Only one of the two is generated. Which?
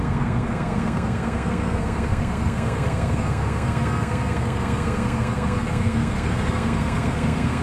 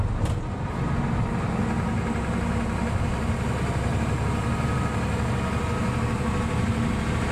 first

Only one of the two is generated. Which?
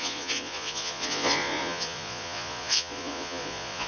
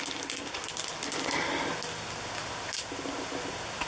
first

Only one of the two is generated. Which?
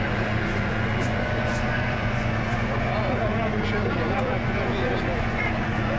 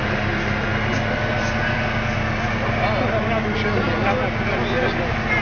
first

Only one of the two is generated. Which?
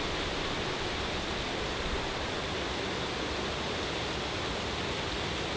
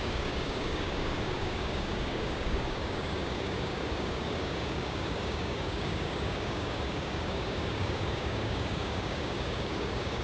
second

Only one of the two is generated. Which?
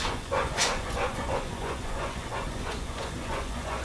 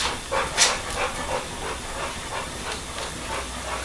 first